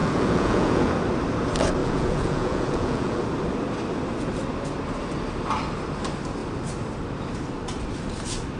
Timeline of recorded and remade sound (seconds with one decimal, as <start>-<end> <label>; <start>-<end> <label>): 0.0-0.9 remade; 0.9-1.8 recorded; 1.8-3.2 remade; 3.2-8.6 recorded